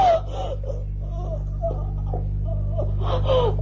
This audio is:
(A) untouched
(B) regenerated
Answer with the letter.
A